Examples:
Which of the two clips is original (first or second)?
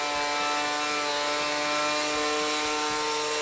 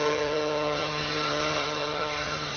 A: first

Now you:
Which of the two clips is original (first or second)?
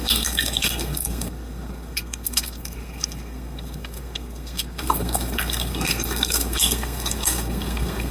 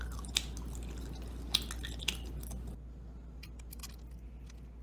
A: second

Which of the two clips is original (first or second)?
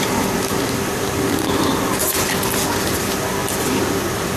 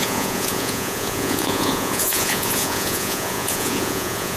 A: first